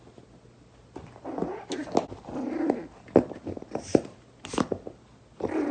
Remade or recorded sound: recorded